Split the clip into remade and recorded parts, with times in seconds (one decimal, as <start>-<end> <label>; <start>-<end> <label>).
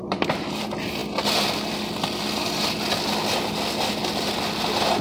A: 0.0-0.6 remade; 0.6-5.0 recorded